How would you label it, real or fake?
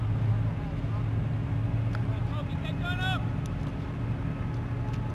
real